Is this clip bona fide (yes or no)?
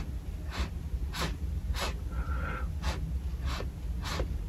yes